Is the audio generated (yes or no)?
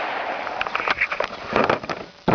no